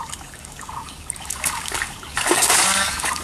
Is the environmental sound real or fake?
fake